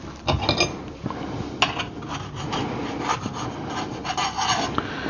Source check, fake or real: real